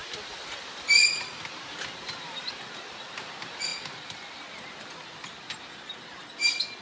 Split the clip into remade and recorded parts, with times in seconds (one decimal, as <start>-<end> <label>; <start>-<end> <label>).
0.0-6.8 recorded